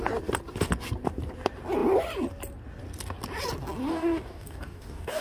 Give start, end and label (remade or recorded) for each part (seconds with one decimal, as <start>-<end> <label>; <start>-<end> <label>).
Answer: 0.0-3.9 recorded; 3.9-5.2 remade